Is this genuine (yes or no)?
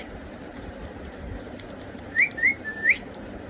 no